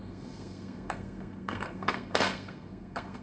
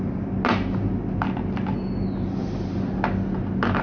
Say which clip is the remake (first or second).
first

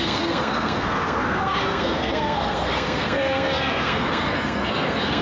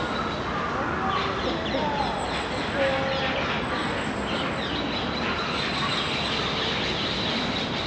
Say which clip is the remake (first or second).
first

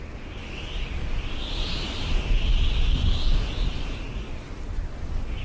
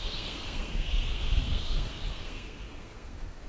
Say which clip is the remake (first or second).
second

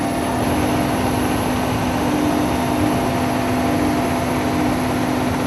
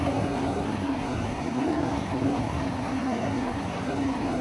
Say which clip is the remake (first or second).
second